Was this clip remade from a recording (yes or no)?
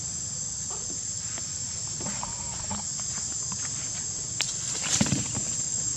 no